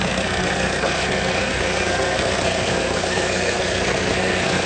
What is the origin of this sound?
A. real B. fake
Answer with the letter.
B